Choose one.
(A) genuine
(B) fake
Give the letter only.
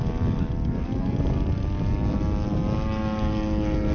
A